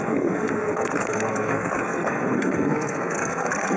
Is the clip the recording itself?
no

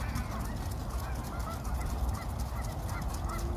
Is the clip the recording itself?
yes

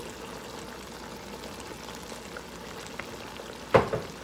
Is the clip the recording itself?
yes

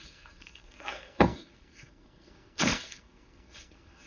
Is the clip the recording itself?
no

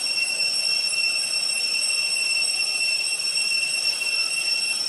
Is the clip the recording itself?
yes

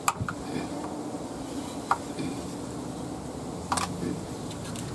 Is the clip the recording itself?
yes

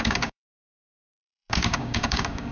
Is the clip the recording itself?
no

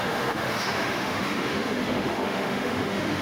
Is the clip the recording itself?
no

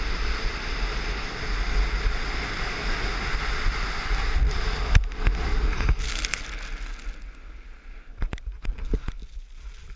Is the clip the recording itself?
yes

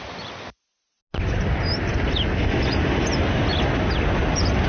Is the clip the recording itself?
yes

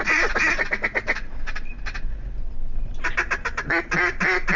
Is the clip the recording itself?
yes